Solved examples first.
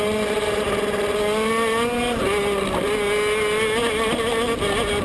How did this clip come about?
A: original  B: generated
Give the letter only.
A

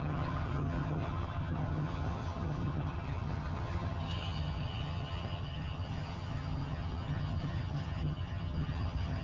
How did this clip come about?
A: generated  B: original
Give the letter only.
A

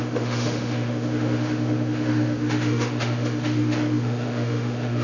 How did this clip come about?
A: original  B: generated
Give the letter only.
B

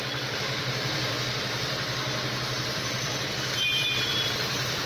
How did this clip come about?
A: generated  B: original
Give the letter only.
A